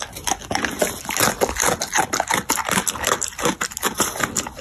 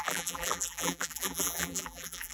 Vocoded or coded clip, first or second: second